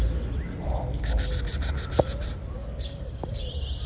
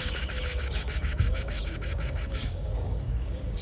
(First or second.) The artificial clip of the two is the second